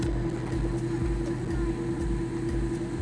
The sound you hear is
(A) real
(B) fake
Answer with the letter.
A